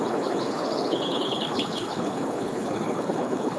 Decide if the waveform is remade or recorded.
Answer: remade